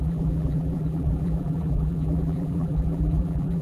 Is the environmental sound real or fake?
fake